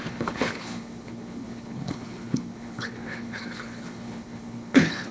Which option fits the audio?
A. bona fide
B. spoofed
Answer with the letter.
B